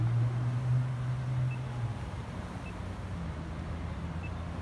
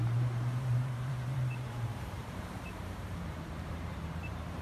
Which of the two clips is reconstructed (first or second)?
second